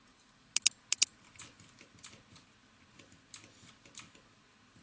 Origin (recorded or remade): recorded